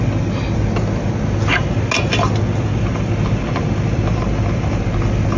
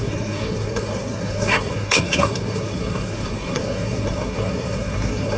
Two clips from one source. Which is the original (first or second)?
first